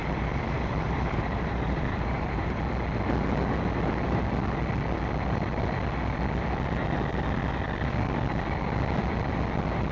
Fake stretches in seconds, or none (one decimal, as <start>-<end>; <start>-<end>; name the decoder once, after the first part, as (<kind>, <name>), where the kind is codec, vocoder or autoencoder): 0.0-2.6 (vocoder, BigVGAN v2)